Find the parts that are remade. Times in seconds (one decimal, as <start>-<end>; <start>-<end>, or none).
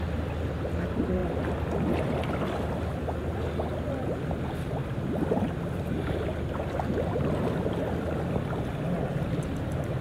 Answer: none